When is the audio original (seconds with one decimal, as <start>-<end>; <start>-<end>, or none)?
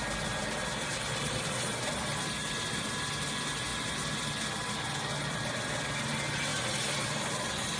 0.0-7.8